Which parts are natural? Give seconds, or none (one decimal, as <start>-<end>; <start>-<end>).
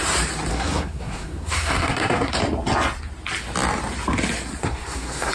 0.0-0.5; 2.3-4.6